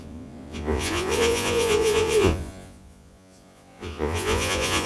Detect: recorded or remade remade